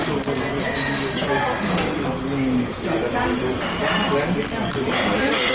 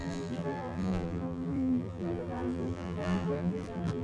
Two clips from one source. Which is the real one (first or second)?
first